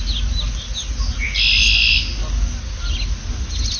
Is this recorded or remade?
recorded